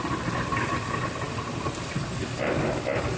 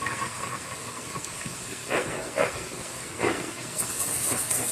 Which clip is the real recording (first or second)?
first